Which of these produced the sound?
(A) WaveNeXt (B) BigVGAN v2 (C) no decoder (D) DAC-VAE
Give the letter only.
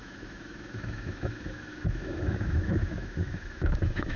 D